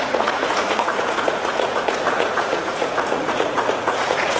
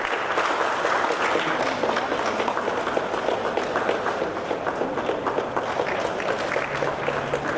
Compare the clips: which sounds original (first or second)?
second